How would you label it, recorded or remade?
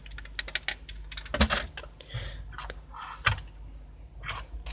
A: recorded